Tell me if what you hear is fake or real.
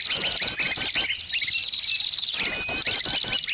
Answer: real